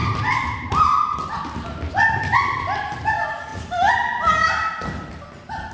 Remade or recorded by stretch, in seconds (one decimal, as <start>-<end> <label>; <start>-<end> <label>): 0.0-1.9 remade; 1.9-5.7 recorded